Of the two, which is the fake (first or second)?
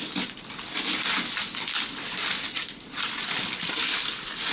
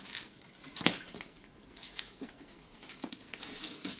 second